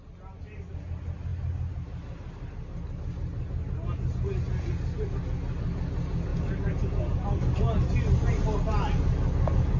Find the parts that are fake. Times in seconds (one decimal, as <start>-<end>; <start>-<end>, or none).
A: none